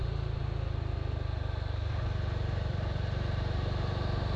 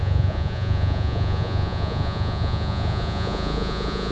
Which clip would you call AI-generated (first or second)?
second